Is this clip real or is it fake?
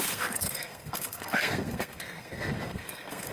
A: fake